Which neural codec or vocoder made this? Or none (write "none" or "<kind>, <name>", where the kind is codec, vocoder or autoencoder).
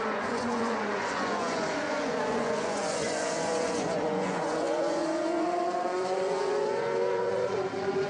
vocoder, Vocos